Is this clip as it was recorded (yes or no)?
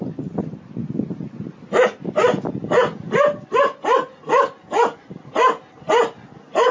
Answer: yes